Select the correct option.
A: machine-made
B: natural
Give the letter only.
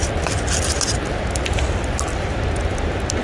B